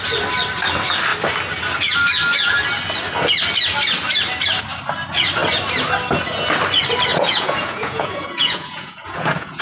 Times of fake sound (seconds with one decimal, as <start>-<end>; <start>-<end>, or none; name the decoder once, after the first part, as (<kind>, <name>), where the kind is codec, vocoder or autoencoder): 7.1-9.6 (vocoder, Vocos)